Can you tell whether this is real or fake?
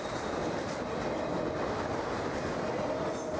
real